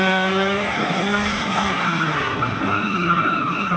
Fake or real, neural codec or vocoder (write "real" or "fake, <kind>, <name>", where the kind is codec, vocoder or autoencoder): fake, codec, SNAC